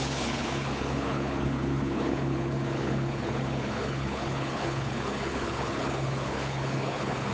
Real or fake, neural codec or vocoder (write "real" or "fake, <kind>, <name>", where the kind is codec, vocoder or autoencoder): fake, codec, HILCodec